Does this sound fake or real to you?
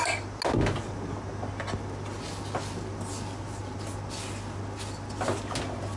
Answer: real